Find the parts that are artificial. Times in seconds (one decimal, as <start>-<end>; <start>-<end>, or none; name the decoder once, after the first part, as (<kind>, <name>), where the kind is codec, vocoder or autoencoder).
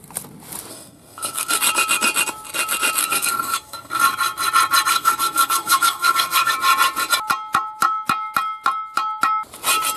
0.7-1.6 (codec, SNAC); 3.0-4.0; 4.9-6.5